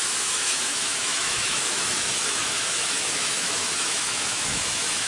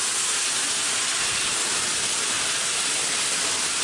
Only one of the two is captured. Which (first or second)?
second